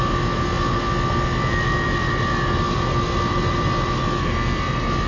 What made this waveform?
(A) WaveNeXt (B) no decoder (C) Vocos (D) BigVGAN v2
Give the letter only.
B